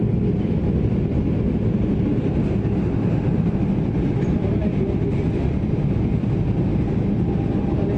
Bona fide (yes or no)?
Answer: yes